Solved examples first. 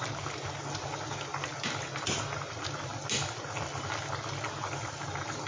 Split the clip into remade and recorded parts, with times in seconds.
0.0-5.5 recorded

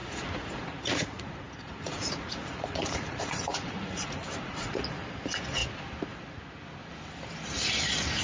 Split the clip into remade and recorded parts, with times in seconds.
0.0-4.8 remade; 4.8-8.2 recorded

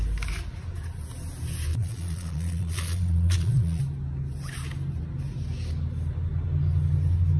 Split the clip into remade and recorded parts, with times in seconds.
0.0-1.7 recorded; 1.7-3.8 remade; 3.8-7.4 recorded

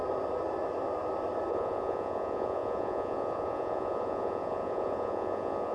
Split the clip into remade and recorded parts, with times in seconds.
0.0-1.5 recorded; 1.5-5.7 remade

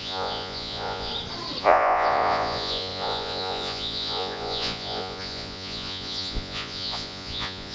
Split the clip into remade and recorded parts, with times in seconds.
0.0-1.1 remade; 1.1-1.6 recorded; 1.6-7.7 remade

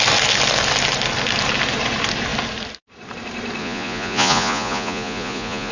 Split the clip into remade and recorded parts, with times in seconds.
0.0-3.6 recorded; 3.6-5.7 remade